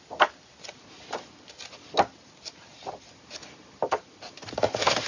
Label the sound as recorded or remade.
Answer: recorded